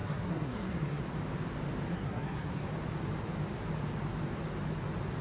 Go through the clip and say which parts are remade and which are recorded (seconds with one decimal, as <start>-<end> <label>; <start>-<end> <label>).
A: 0.0-1.0 remade; 1.0-1.9 recorded; 1.9-2.7 remade; 2.7-5.2 recorded